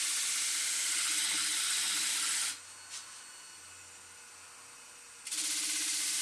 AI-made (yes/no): no